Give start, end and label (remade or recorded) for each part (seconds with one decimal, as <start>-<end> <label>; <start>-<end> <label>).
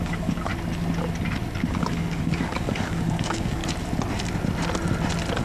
0.0-0.5 remade; 0.5-1.7 recorded; 1.7-3.6 remade; 3.6-5.4 recorded